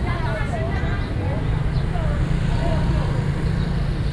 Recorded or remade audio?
recorded